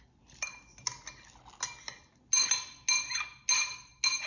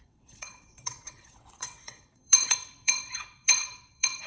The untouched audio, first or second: first